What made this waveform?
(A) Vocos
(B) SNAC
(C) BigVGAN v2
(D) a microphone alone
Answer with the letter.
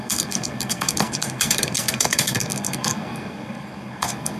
B